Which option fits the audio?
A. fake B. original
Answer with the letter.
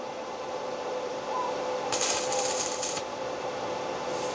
A